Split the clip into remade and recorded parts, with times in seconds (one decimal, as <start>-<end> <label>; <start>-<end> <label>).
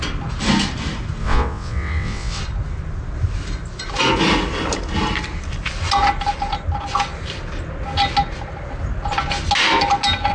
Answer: 0.0-1.2 recorded; 1.2-2.4 remade; 2.4-10.3 recorded